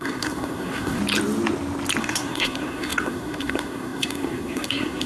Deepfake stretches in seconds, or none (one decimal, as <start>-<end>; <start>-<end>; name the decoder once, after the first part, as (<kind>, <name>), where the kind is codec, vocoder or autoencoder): 0.0-1.0 (codec, SNAC); 2.0-5.1